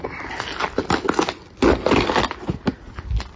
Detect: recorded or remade recorded